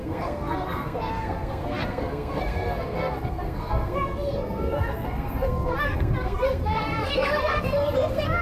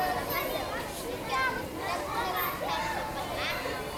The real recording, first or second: second